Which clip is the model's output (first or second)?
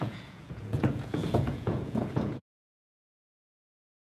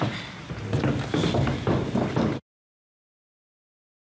first